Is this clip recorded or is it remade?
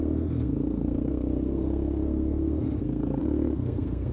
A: remade